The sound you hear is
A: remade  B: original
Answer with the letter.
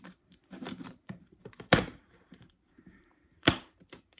A